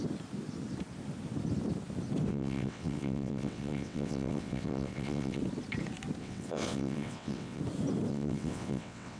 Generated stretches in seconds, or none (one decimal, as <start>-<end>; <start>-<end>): 2.3-5.4; 6.2-7.6; 8.1-9.2